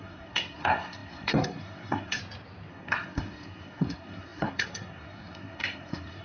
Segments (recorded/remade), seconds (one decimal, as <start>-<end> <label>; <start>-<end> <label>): 0.0-2.2 remade; 2.2-2.7 recorded; 2.7-6.2 remade